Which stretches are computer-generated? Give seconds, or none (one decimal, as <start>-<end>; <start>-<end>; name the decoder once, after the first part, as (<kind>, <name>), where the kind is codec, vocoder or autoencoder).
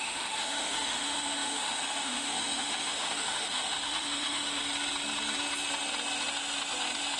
0.0-4.6 (autoencoder, DAC-VAE)